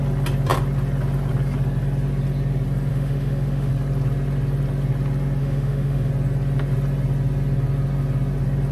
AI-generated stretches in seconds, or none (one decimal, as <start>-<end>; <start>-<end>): 2.9-3.7; 5.4-6.1